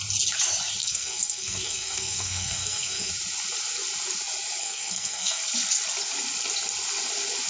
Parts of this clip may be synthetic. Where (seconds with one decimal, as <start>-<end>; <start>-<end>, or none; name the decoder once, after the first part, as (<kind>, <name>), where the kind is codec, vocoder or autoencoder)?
0.8-3.1 (codec, SNAC); 4.6-5.4